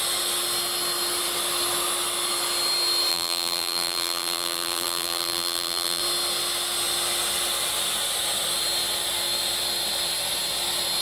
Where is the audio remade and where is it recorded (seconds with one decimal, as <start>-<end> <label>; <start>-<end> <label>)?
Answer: 0.0-3.1 recorded; 3.1-6.0 remade; 6.0-11.0 recorded